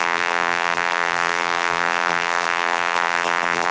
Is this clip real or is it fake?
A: fake